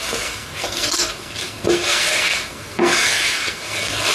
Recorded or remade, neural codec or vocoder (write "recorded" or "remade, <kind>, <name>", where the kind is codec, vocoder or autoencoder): remade, codec, SNAC